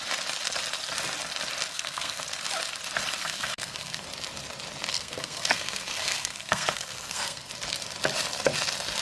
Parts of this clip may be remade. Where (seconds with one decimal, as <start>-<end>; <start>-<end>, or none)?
1.7-2.2; 3.2-4.0; 4.9-7.5